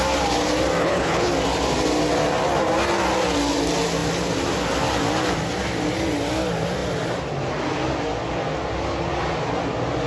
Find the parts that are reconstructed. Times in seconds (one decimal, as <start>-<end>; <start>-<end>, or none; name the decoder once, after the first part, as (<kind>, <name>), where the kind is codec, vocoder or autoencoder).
0.8-1.3 (codec, HILCodec)